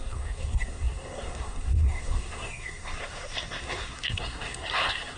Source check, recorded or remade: remade